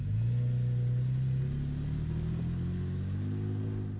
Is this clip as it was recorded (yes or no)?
yes